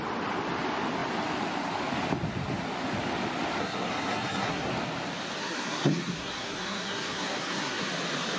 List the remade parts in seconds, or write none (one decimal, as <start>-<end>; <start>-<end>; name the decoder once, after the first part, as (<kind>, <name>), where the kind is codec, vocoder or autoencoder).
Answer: 3.6-4.7 (codec, SNAC); 5.4-7.9